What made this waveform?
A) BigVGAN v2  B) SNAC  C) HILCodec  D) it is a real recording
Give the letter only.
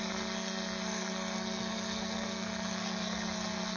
B